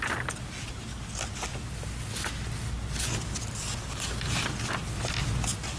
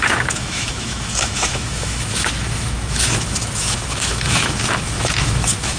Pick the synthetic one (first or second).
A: second